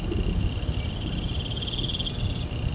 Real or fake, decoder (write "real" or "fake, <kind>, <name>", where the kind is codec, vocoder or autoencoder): real